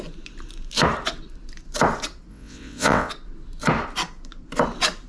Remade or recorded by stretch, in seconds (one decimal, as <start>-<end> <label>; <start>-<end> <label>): 0.0-2.3 recorded; 2.3-3.1 remade; 3.1-5.1 recorded